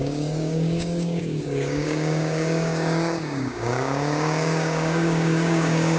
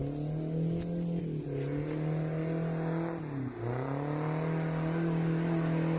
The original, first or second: second